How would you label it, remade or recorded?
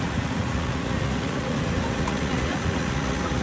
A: remade